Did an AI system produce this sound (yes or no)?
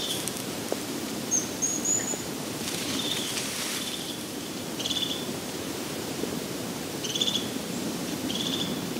yes